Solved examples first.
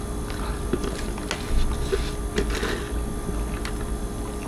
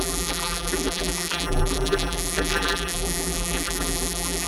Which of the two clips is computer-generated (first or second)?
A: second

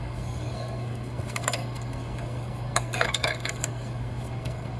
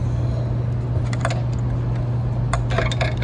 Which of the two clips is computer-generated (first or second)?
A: first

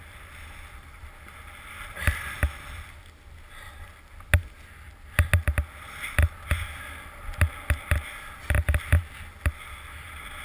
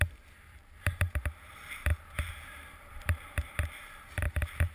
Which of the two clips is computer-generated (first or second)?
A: second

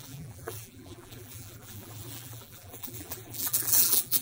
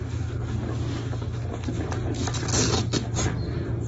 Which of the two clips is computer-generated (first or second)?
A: first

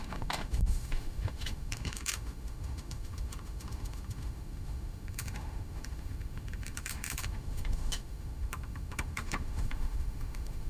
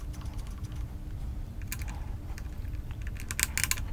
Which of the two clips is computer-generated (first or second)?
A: first